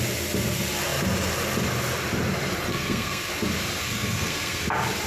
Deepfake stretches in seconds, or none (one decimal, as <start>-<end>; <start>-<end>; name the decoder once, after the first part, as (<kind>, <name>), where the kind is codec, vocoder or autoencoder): 2.7-3.3 (codec, SNAC); 3.8-4.6